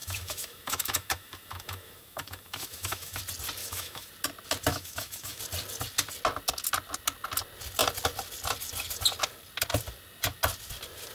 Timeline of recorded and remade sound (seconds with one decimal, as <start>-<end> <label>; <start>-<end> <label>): 0.0-3.2 remade; 3.2-3.6 recorded; 3.6-4.1 remade; 4.1-4.7 recorded; 4.7-5.4 remade; 5.4-11.1 recorded